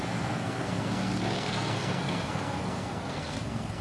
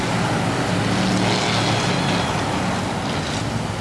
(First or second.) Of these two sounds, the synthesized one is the first